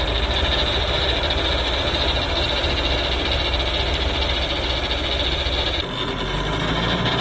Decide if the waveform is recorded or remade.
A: recorded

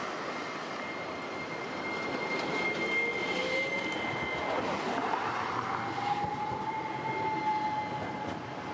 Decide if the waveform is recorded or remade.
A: recorded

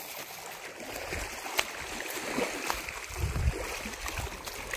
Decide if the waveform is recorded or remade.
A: recorded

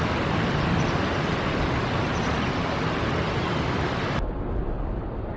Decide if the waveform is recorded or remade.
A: recorded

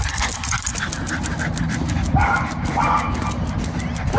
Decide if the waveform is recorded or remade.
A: recorded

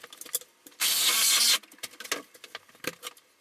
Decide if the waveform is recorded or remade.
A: recorded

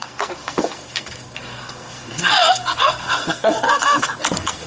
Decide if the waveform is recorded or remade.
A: remade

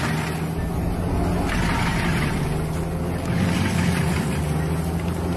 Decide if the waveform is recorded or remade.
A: recorded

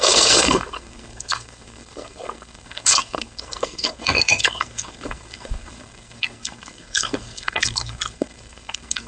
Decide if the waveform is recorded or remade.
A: remade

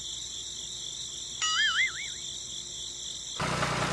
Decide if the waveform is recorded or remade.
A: recorded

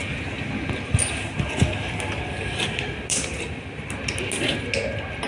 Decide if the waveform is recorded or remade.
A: recorded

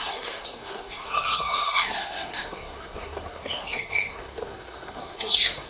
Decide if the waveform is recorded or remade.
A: remade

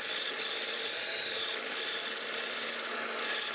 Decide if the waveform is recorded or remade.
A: recorded